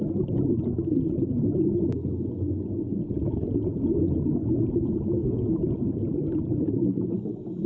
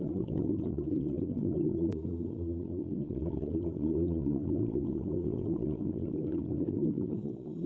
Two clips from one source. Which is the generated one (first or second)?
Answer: second